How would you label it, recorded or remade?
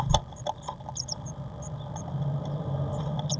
remade